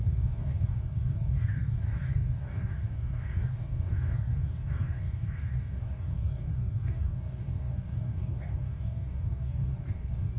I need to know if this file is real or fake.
fake